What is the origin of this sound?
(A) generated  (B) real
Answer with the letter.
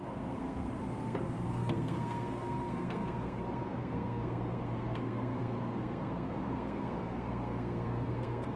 A